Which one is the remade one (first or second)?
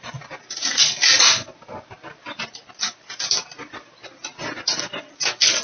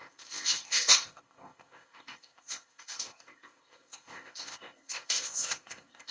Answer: second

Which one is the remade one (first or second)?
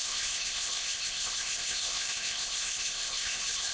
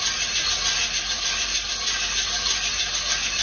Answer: first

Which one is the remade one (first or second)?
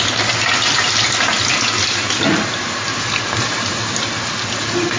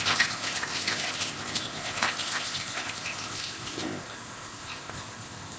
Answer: second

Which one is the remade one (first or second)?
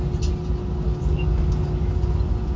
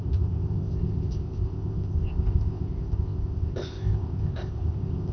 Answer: second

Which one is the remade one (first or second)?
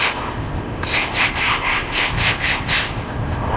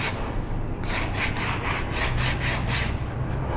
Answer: first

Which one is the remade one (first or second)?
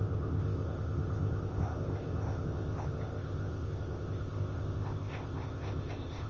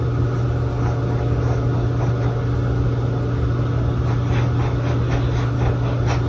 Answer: first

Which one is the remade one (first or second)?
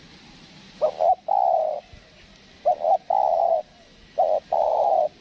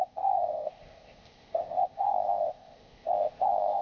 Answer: second